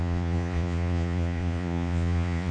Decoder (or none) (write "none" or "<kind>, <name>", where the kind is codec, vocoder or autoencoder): vocoder, Vocos